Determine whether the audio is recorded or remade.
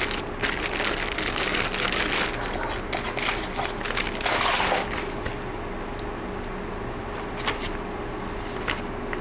recorded